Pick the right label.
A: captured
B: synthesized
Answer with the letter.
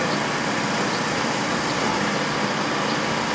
A